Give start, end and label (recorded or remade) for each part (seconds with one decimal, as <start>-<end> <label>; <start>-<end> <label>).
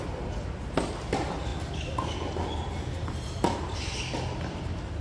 0.0-5.0 recorded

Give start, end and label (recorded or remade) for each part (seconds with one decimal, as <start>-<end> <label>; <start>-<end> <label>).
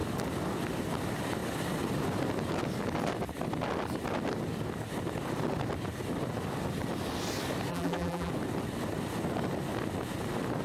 0.0-7.7 recorded; 7.7-8.3 remade; 8.3-10.6 recorded